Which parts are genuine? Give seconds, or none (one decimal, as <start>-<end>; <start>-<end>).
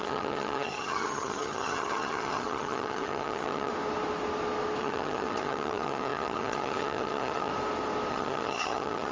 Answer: 3.7-4.8; 7.5-8.1